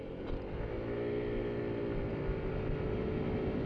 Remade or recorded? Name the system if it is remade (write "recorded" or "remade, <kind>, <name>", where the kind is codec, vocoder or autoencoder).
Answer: recorded